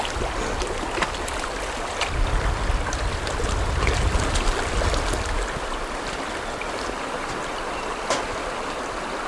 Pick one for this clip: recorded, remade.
recorded